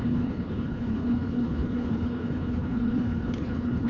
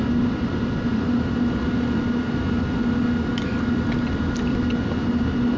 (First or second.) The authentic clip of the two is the second